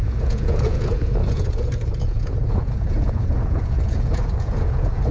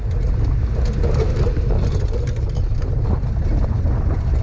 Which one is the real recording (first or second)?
second